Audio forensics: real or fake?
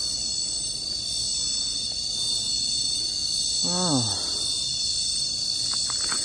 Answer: real